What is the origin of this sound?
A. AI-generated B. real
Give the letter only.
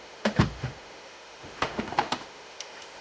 A